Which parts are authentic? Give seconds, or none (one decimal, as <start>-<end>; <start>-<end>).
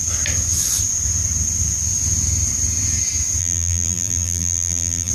0.0-3.4